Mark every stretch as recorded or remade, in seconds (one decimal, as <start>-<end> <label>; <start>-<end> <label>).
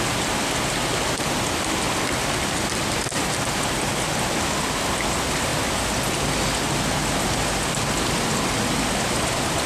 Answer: 0.0-9.7 recorded